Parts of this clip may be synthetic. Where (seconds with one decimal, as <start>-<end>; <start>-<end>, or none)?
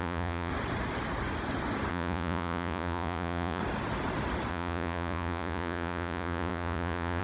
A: 0.0-0.5; 1.9-3.6; 4.5-7.2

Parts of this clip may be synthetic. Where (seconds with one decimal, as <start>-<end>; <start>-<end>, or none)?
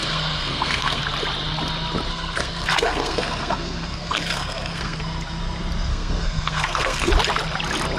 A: 0.0-1.0; 2.1-5.0; 5.9-7.1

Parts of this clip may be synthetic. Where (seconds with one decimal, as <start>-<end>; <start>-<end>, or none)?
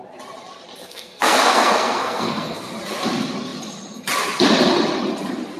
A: 0.8-2.7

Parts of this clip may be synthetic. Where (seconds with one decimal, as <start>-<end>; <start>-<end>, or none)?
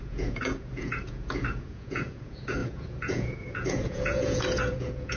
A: 0.0-5.2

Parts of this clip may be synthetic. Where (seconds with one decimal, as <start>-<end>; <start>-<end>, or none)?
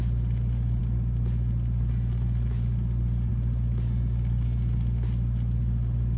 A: none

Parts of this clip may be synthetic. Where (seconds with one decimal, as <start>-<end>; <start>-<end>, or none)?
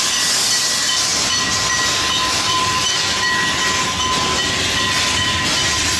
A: none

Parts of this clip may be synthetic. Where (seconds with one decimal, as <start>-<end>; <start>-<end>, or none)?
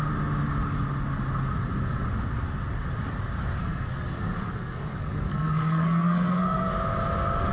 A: 3.6-6.7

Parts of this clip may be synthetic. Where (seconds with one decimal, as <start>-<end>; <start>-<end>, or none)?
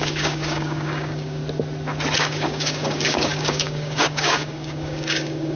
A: 0.0-1.4; 2.2-5.6